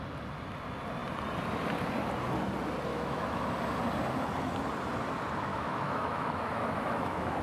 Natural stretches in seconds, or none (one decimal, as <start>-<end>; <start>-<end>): 0.0-2.9; 3.5-5.5